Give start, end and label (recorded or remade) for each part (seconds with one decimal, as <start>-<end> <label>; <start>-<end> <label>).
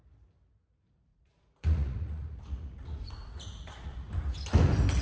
0.0-1.1 recorded; 1.1-4.1 remade; 4.1-5.0 recorded